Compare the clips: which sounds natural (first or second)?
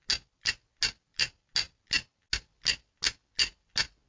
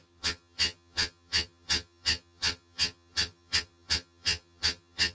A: first